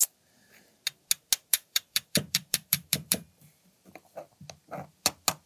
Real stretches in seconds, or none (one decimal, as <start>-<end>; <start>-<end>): 0.0-1.5; 4.2-5.5